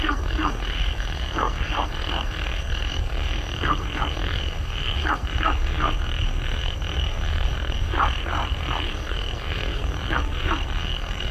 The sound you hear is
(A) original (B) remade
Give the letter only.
B